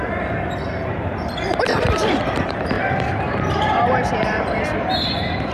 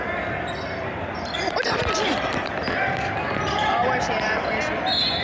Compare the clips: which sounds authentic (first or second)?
second